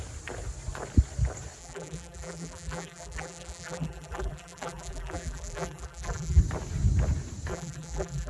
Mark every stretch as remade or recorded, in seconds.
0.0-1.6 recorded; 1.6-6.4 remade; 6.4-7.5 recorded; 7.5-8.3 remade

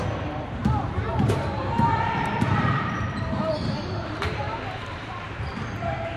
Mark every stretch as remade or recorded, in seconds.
0.0-5.5 remade; 5.5-6.2 recorded